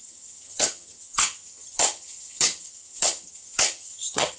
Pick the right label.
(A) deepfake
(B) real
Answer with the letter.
A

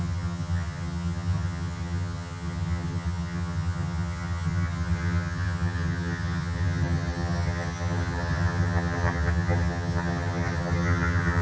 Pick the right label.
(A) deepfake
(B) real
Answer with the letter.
A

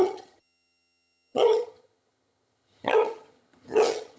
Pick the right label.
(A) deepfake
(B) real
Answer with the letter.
A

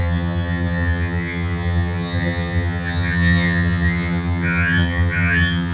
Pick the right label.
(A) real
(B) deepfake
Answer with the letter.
B